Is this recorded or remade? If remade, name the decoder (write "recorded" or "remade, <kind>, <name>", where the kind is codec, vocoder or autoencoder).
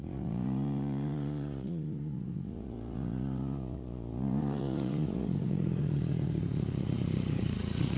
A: remade, vocoder, Vocos